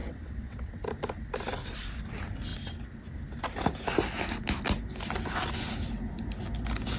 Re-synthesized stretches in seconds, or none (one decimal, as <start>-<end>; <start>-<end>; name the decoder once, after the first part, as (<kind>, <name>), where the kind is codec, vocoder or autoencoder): 0.0-0.7 (vocoder, WaveNeXt)